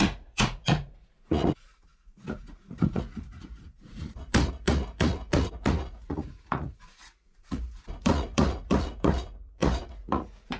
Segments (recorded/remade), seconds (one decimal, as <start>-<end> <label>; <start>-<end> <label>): 0.0-10.6 remade

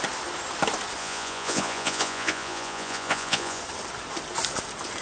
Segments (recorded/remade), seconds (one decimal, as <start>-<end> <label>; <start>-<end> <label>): 0.0-1.0 recorded; 1.0-3.6 remade; 3.6-5.0 recorded

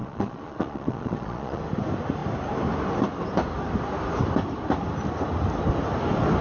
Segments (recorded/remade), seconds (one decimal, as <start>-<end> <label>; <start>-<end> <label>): 0.0-1.6 remade; 1.6-6.4 recorded

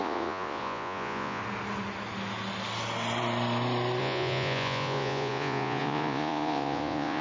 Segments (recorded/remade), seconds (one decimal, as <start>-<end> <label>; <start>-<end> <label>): 0.0-1.4 remade; 1.4-4.0 recorded; 4.0-7.2 remade

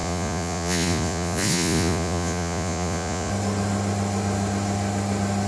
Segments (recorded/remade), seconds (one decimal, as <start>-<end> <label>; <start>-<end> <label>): 0.0-3.3 remade; 3.3-5.5 recorded

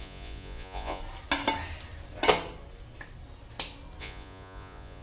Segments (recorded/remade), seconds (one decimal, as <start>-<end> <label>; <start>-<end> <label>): 0.0-1.0 remade; 1.0-4.0 recorded; 4.0-5.0 remade

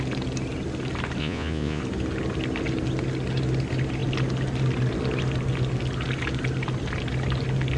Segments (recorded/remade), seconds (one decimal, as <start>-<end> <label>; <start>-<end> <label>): 0.0-1.2 recorded; 1.2-1.8 remade; 1.8-7.8 recorded

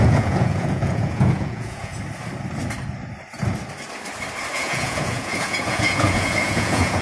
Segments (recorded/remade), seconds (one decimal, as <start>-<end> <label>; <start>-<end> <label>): 0.0-1.9 remade; 1.9-4.5 recorded; 4.5-7.0 remade